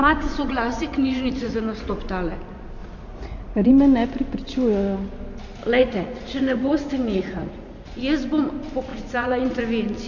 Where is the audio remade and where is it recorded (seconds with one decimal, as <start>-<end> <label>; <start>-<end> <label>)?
0.0-1.9 remade; 1.9-2.8 recorded; 2.8-3.7 remade; 3.7-5.8 recorded; 5.8-8.0 remade; 8.0-8.9 recorded; 8.9-9.6 remade; 9.6-10.1 recorded